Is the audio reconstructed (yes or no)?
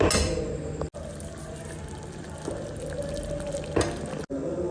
no